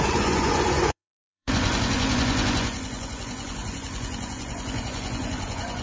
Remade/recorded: remade